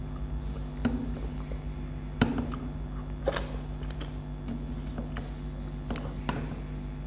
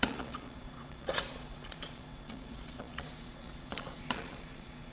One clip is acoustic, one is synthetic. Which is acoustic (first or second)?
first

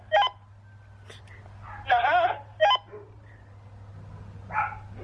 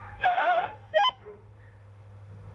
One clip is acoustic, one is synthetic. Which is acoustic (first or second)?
first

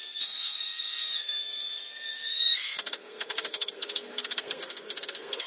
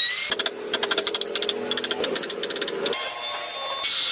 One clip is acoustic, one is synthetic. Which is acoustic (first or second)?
second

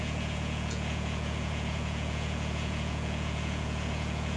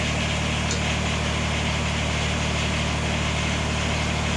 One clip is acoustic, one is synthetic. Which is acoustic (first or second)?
second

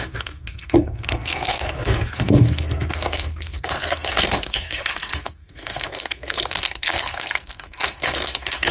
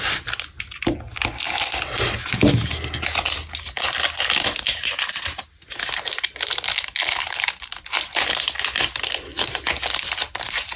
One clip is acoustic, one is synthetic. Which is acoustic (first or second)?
second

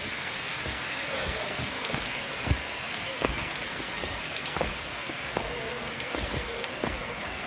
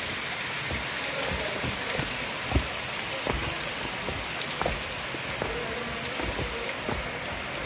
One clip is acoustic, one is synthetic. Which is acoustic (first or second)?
second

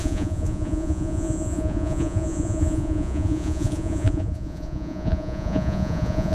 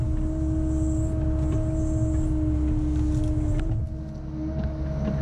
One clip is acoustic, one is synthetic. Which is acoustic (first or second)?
second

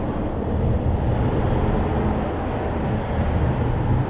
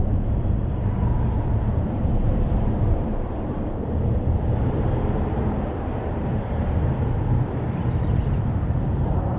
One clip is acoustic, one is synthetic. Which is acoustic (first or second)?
first